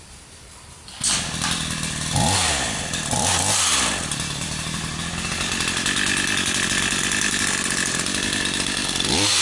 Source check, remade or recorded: recorded